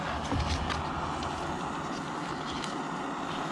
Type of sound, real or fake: real